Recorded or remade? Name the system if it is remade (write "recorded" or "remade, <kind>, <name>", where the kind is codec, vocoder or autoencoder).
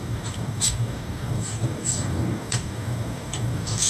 remade, codec, DAC